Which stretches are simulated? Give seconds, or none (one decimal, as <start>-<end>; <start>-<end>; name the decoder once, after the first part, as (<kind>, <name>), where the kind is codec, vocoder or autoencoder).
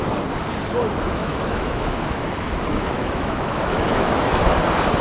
1.2-4.2 (autoencoder, DAC-VAE)